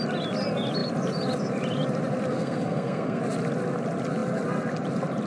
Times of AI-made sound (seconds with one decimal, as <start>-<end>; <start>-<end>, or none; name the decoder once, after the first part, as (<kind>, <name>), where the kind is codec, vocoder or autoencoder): 2.3-3.2 (codec, SNAC)